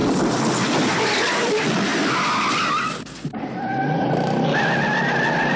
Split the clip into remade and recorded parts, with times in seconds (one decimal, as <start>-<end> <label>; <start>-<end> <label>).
0.0-1.5 remade; 1.5-5.6 recorded

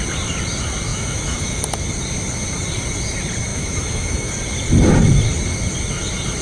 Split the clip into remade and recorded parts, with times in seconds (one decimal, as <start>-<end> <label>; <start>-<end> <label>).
0.0-0.9 recorded; 0.9-1.6 remade; 1.6-3.5 recorded; 3.5-4.3 remade; 4.3-6.4 recorded

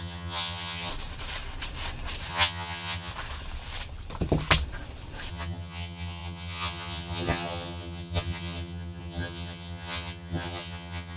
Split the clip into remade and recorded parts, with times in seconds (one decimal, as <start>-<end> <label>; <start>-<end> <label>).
0.0-0.9 remade; 0.9-2.3 recorded; 2.3-3.1 remade; 3.1-5.3 recorded; 5.3-11.2 remade

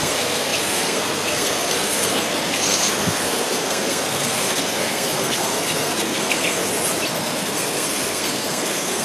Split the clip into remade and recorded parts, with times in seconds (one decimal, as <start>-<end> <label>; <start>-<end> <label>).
0.0-6.6 remade; 6.6-7.1 recorded; 7.1-9.0 remade

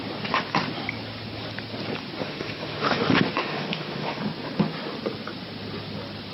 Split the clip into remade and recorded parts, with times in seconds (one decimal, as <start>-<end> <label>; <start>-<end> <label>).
0.0-2.2 recorded; 2.2-3.0 remade; 3.0-3.4 recorded; 3.4-4.2 remade; 4.2-6.3 recorded